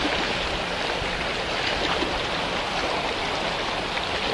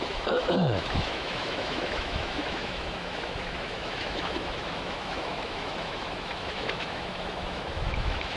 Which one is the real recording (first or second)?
first